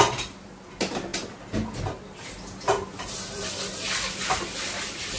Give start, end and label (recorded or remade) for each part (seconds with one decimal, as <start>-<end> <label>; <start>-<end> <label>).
0.0-5.2 recorded